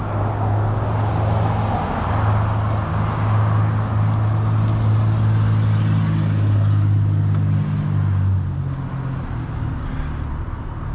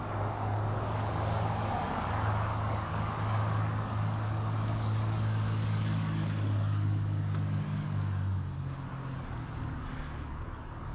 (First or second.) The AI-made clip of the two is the second